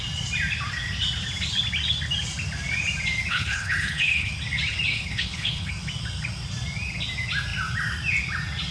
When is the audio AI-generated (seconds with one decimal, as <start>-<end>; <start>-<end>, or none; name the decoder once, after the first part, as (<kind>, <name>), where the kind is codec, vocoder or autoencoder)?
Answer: 3.3-4.3 (codec, HILCodec); 4.9-5.7